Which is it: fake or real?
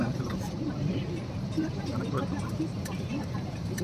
fake